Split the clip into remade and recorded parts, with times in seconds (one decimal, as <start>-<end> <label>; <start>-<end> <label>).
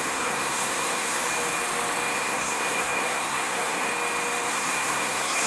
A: 0.0-1.2 remade; 1.2-2.1 recorded; 2.1-3.9 remade; 3.9-4.5 recorded; 4.5-5.5 remade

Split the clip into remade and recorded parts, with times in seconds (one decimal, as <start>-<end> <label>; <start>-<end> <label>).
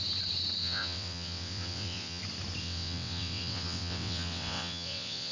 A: 0.0-0.6 recorded; 0.6-2.2 remade; 2.2-2.6 recorded; 2.6-5.3 remade